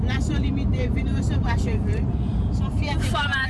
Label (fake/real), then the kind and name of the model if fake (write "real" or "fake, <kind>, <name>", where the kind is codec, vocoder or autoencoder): fake, vocoder, BigVGAN v2